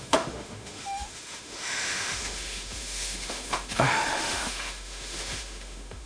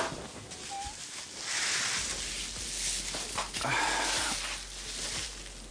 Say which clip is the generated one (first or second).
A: first